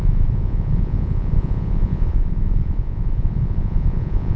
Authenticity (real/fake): fake